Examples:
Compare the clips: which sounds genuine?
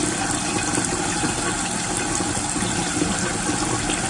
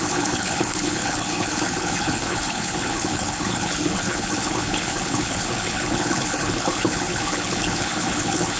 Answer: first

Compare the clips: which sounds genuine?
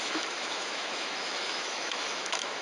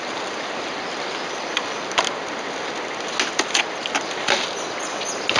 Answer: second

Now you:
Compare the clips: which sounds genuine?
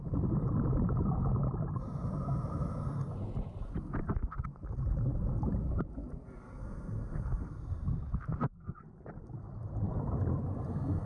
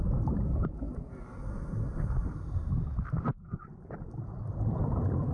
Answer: first